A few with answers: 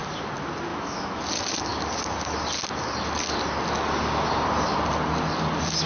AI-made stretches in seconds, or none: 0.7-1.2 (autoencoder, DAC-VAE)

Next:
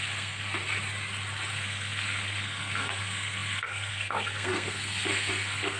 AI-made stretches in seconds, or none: 0.0-0.6 (codec, SNAC); 1.5-5.8